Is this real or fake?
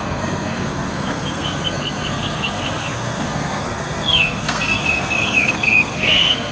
fake